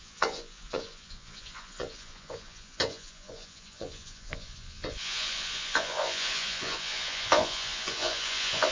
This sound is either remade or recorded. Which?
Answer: remade